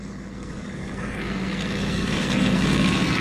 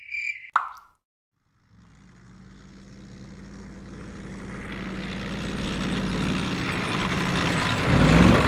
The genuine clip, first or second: second